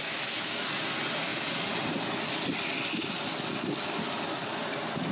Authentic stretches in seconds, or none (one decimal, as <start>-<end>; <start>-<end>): 0.6-5.1